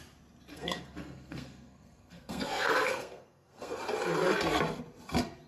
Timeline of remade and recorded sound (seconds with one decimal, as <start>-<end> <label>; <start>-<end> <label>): 0.0-0.5 recorded; 0.5-3.8 remade; 3.8-5.5 recorded